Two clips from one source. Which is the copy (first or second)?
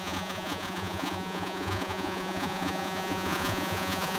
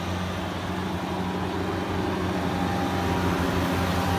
first